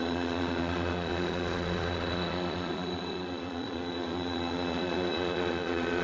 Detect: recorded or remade remade